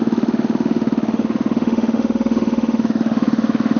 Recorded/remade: remade